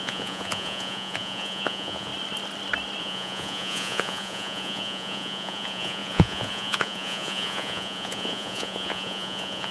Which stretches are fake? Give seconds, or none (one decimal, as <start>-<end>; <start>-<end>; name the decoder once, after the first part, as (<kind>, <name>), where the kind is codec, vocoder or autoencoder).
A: 0.0-2.1 (vocoder, Vocos); 3.0-9.7